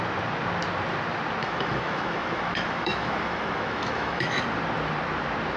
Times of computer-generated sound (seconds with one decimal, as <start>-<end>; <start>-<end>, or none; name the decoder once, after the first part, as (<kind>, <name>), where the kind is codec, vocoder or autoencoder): 1.4-4.4 (autoencoder, DAC-VAE)